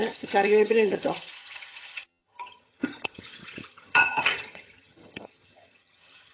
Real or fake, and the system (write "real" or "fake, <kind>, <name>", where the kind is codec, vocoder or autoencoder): fake, vocoder, HiFi-GAN